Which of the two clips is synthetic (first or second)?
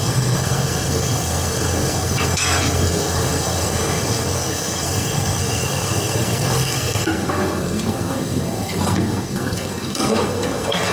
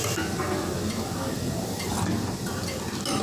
first